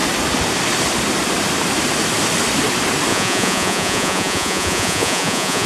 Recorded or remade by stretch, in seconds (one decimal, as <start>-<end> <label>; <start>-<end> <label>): 0.0-3.1 recorded; 3.1-5.7 remade